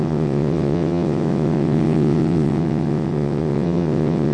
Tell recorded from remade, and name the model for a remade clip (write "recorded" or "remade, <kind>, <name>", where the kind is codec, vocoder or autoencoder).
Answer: remade, vocoder, WaveNeXt